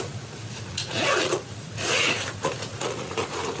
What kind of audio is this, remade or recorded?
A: remade